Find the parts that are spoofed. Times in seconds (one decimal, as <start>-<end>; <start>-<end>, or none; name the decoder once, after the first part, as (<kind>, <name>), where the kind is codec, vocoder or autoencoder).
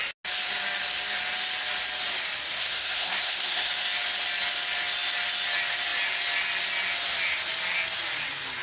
2.5-3.7 (codec, SNAC)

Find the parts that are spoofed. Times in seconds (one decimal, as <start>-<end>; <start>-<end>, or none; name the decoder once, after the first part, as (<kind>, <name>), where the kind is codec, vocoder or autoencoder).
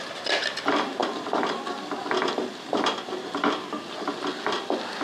1.0-4.0 (vocoder, BigVGAN v2)